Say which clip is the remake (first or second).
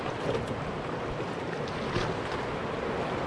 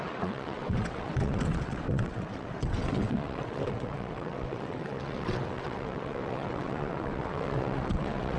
second